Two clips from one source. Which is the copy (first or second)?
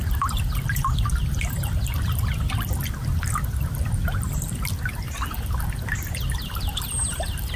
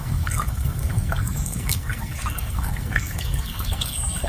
second